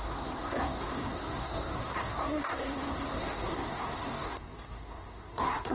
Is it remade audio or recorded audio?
remade